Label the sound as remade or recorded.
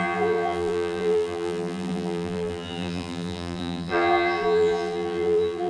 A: remade